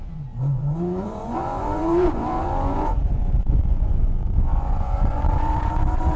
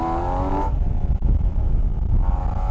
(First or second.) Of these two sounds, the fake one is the first